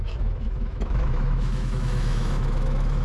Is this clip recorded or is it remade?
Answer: remade